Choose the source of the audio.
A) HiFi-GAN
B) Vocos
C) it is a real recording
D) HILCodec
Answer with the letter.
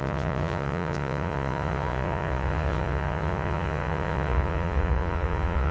B